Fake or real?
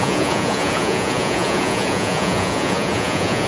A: fake